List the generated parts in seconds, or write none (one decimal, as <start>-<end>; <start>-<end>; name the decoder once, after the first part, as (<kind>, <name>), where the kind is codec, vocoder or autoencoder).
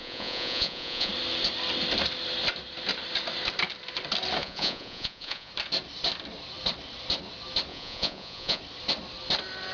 0.0-1.1 (vocoder, Vocos); 4.4-5.5; 7.7-8.6